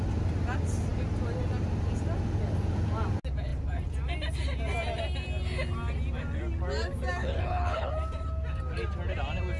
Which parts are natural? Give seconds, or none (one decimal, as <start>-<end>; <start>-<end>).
0.0-7.2; 7.9-9.6